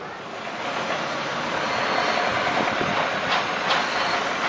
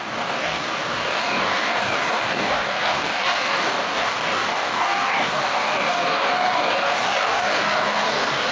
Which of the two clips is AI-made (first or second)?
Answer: second